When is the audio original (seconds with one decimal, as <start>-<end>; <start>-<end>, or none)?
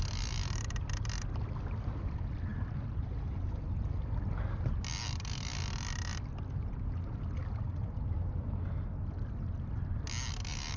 0.0-10.8